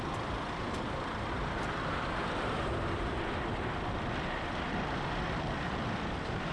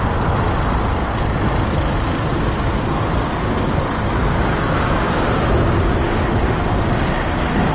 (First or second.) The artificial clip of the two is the first